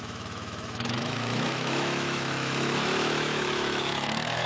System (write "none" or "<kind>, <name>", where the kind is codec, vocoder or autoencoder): autoencoder, DAC-VAE